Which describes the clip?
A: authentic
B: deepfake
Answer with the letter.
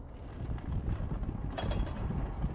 A